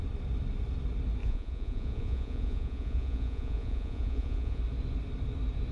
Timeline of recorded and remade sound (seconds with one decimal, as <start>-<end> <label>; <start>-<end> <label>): 0.0-1.2 recorded; 1.2-4.6 remade; 4.6-5.7 recorded